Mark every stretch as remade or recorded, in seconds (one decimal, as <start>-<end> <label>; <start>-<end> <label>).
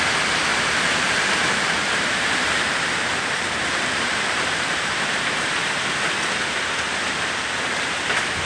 0.0-0.5 recorded; 0.5-5.6 remade; 5.6-8.5 recorded